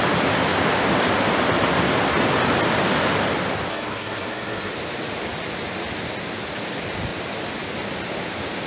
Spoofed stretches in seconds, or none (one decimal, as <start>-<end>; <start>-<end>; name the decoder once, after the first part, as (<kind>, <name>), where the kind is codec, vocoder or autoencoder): 3.7-4.7 (codec, SNAC)

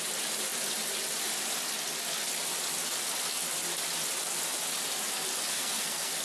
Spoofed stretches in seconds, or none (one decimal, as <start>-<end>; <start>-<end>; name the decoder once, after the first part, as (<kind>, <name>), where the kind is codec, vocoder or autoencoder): 5.5-6.2 (codec, SNAC)

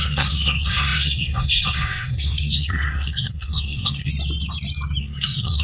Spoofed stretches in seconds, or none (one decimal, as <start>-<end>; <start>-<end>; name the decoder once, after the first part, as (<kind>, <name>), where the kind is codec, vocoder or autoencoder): 0.0-4.1 (codec, SNAC); 5.0-5.6

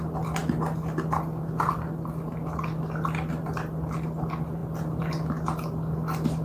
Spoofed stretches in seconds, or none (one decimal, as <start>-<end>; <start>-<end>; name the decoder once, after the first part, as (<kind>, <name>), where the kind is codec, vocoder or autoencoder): none

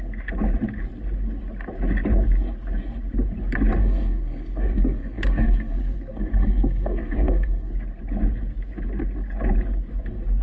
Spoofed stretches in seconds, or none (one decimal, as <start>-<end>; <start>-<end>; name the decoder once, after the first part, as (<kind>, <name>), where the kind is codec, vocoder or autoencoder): 3.8-7.7 (codec, SNAC)

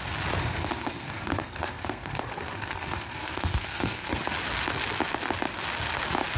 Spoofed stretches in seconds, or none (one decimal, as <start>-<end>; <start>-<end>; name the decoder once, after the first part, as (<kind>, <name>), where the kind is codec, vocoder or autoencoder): 0.4-4.2 (codec, SNAC)

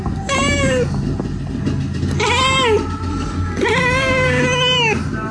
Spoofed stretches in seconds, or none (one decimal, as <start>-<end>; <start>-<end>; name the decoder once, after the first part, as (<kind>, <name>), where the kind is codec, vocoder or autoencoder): 3.1-3.6 (codec, SNAC)